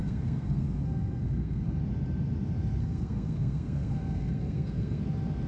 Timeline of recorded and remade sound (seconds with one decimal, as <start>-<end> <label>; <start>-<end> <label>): 0.0-1.8 remade; 1.8-2.8 recorded; 2.8-5.0 remade; 5.0-5.5 recorded